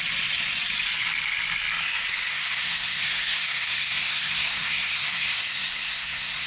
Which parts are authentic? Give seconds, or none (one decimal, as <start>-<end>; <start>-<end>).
0.0-2.3